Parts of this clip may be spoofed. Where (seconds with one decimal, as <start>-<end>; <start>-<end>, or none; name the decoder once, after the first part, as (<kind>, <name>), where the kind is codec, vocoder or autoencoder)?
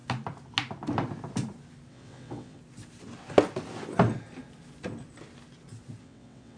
1.9-2.6 (vocoder, WaveNeXt); 6.0-6.6